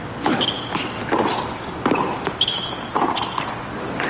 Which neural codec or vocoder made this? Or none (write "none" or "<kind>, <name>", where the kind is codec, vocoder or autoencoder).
none